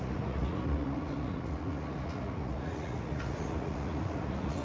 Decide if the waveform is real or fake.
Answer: fake